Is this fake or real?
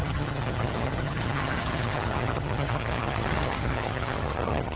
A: fake